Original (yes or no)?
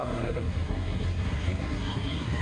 no